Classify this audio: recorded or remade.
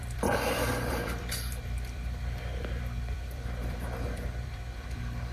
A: remade